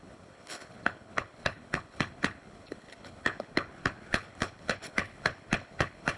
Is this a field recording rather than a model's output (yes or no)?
no